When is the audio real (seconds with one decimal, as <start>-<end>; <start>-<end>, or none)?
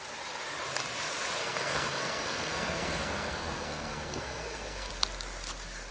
0.0-1.4; 4.9-5.9